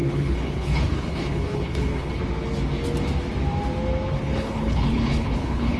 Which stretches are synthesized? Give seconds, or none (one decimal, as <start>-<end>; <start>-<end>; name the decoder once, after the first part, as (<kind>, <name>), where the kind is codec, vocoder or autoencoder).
0.0-2.2 (codec, HILCodec); 4.2-5.8